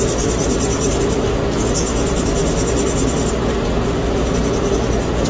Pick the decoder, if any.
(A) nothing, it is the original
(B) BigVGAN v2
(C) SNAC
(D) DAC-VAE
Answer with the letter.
A